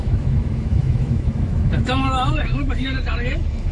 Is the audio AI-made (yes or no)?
yes